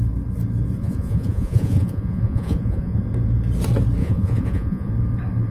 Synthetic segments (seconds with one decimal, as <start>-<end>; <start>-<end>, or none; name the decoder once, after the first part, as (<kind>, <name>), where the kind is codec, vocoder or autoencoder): 0.8-3.0 (vocoder, Vocos); 4.0-4.9